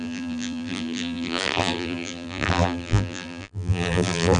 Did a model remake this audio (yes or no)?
yes